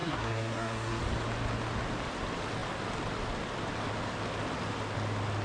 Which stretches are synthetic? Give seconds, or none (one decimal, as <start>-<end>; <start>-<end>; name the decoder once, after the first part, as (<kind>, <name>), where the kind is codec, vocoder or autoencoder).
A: 0.0-1.0 (codec, SNAC)